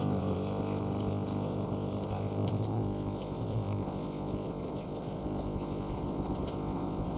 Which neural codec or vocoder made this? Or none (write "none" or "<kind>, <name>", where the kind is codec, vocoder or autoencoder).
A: codec, ZipCodec